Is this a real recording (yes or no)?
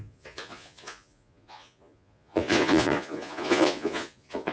no